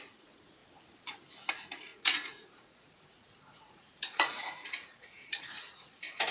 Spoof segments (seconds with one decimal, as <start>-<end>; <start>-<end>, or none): 0.0-0.6; 1.5-6.3